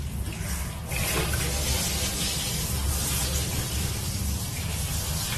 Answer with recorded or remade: recorded